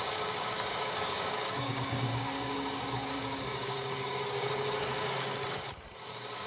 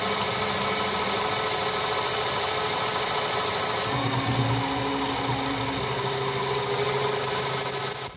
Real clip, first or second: second